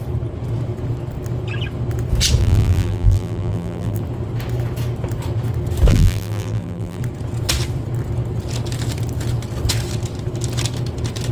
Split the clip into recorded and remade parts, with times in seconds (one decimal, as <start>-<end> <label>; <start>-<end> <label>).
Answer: 0.0-2.4 recorded; 2.4-4.0 remade; 4.0-5.9 recorded; 5.9-7.0 remade; 7.0-11.3 recorded